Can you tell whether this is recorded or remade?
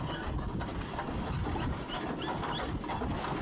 recorded